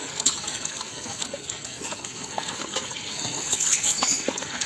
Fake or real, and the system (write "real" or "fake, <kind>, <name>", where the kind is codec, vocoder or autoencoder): fake, codec, SNAC